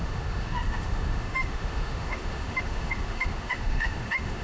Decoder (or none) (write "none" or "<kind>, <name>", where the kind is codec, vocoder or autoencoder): autoencoder, DAC-VAE